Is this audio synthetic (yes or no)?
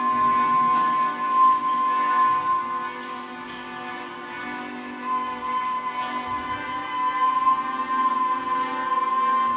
no